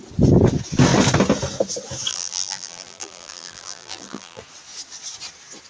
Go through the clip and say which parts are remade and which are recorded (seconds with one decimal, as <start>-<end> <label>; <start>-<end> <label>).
0.0-2.1 recorded; 2.1-4.4 remade; 4.4-5.7 recorded